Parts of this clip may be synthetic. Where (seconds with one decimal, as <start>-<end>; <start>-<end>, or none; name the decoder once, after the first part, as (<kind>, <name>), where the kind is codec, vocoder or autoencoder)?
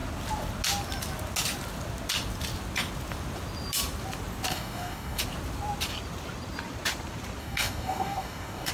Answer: 4.5-5.2 (codec, DAC); 7.4-8.7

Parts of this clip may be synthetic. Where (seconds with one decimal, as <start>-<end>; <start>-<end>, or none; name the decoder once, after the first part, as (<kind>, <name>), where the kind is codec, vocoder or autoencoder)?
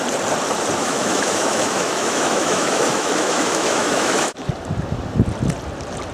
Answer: 0.8-4.5 (autoencoder, DAC-VAE)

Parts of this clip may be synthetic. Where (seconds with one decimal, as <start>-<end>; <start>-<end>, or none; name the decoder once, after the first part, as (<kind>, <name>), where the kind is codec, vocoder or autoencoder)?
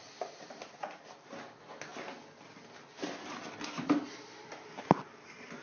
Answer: none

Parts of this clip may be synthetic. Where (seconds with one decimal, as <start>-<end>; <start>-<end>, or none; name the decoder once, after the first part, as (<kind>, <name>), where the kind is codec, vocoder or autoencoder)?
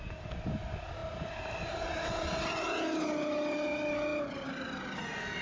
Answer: none